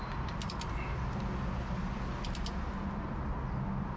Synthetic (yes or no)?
no